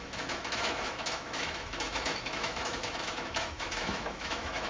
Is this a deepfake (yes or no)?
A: yes